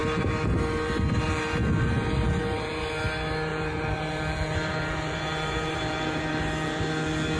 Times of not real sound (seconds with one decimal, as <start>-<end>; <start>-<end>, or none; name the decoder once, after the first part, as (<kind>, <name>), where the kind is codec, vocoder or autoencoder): 0.0-2.8 (vocoder, BigVGAN v2); 3.5-6.8